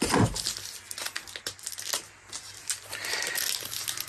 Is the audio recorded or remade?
recorded